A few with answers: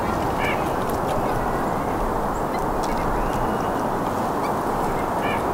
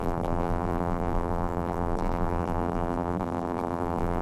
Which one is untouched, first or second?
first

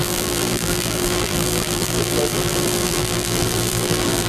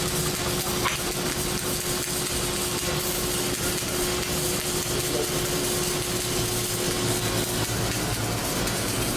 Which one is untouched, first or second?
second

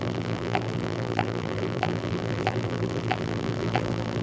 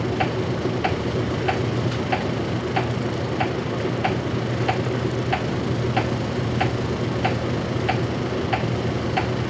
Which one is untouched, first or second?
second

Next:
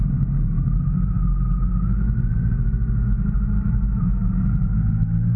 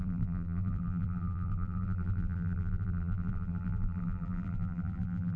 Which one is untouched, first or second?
first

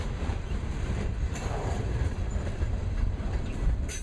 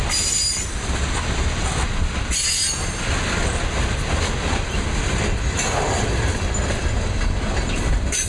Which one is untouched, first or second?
second